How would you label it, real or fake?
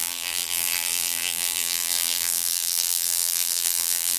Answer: fake